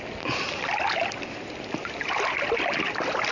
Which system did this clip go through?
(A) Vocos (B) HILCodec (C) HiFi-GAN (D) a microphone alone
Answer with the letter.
D